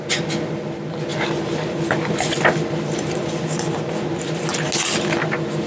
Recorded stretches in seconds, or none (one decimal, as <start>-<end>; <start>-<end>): 0.0-1.1; 3.9-5.7